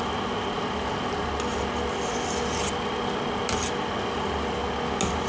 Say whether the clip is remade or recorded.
recorded